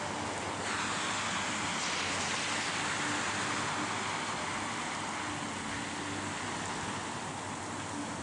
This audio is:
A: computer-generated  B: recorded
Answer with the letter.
B